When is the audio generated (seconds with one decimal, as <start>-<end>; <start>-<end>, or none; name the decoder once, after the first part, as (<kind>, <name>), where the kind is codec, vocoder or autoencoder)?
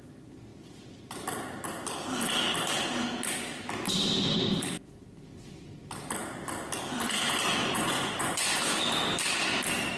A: 7.6-8.6 (vocoder, Vocos)